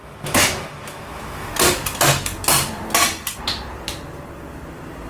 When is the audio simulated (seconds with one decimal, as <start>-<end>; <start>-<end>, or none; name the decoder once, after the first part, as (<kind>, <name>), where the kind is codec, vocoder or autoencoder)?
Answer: 0.0-1.5 (autoencoder, DAC-VAE)